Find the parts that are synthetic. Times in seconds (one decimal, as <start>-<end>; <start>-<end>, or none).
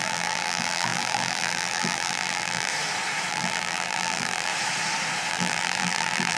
0.0-2.7; 3.3-4.5; 5.3-6.4